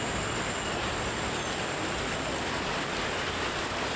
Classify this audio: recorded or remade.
recorded